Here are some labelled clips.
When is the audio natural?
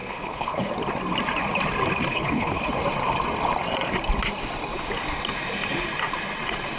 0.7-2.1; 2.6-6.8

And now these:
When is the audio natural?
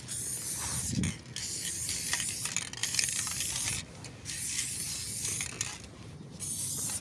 0.0-7.0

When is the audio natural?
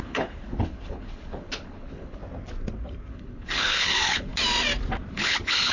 2.2-3.1; 4.3-5.1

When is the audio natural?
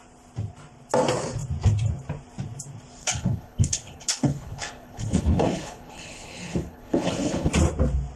0.0-3.0; 7.5-8.2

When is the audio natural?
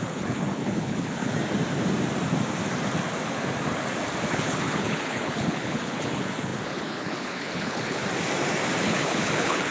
1.4-4.3; 8.0-8.8